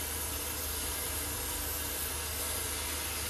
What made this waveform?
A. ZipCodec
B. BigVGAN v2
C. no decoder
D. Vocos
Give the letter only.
C